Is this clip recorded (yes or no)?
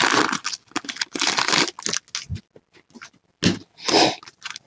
yes